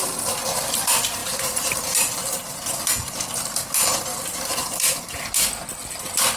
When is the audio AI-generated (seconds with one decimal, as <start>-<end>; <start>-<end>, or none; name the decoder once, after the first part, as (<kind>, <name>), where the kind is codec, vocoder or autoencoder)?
1.2-2.4 (vocoder, BigVGAN v2); 4.1-5.0